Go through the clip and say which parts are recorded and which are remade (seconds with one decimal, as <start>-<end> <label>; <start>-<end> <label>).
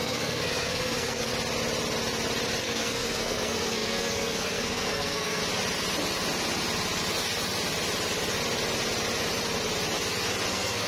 0.0-1.3 remade; 1.3-2.6 recorded; 2.6-5.4 remade; 5.4-10.5 recorded; 10.5-10.9 remade